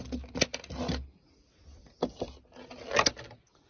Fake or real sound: real